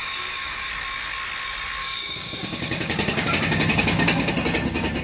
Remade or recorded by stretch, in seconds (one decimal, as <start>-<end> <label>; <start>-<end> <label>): 0.0-0.7 remade; 0.7-1.8 recorded; 1.8-4.3 remade; 4.3-5.0 recorded